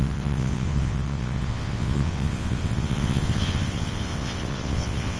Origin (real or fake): fake